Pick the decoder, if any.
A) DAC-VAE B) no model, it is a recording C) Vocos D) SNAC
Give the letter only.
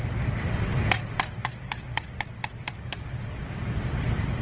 B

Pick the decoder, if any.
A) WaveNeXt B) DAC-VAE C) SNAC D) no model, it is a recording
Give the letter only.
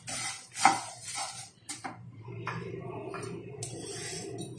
D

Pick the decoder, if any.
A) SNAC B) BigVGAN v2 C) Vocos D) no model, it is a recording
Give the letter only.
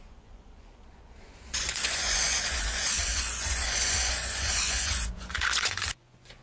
C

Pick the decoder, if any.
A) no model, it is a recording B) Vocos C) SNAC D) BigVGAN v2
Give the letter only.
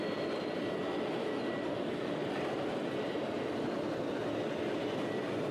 A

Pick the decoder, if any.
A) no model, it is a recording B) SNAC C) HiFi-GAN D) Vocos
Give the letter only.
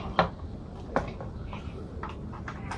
A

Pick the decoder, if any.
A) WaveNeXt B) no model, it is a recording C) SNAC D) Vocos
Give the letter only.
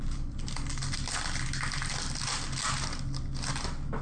B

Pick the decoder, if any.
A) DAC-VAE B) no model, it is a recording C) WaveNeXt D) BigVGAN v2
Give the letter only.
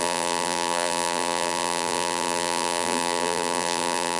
D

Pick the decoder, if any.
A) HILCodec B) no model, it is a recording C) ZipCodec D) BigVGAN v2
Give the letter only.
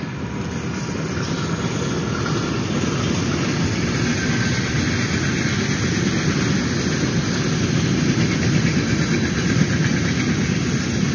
B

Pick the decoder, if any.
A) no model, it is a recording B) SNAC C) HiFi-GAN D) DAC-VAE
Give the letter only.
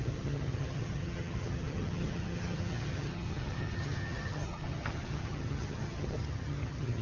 C